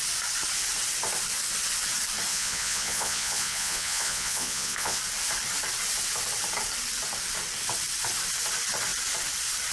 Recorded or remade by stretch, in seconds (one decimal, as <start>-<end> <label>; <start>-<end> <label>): 0.0-2.3 recorded; 2.3-5.0 remade; 5.0-9.7 recorded